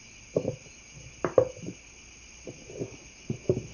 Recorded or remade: recorded